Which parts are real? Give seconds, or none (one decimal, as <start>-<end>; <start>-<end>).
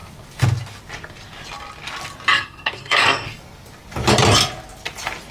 0.0-2.3; 3.4-5.3